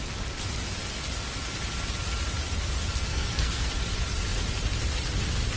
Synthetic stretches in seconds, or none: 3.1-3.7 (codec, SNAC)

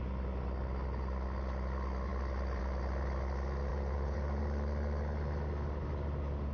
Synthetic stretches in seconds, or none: 3.7-4.4 (vocoder, Vocos)

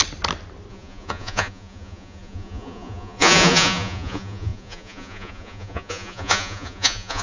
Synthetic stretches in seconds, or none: 0.7-7.2 (vocoder, Vocos)

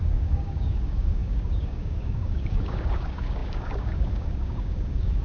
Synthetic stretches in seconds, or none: 0.0-5.2 (codec, DAC)